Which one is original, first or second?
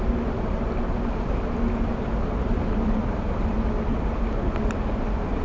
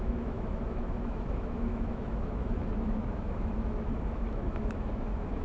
first